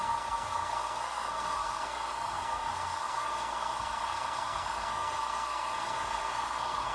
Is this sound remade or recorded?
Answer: remade